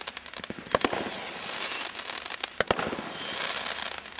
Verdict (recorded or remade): recorded